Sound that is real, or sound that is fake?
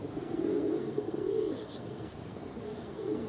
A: fake